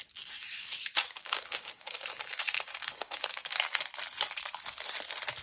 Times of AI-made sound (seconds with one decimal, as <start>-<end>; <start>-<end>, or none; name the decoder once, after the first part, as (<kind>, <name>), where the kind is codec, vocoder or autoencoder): 0.6-3.8 (codec, DAC)